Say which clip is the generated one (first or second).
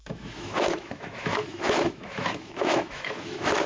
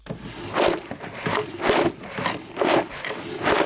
first